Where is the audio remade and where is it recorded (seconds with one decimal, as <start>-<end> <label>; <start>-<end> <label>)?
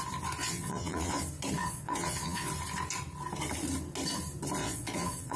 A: 0.0-0.4 recorded; 0.4-1.2 remade; 1.2-1.6 recorded; 1.6-2.5 remade; 2.5-4.6 recorded; 4.6-5.4 remade